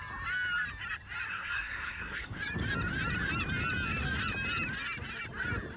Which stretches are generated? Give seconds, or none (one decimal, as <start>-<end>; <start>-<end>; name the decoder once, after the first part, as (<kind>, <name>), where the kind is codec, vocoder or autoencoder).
1.3-2.4 (codec, SNAC)